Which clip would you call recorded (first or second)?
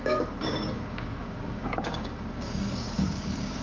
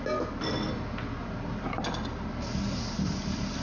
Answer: second